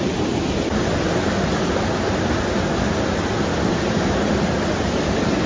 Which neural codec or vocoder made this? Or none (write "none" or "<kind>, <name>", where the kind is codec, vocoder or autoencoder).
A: none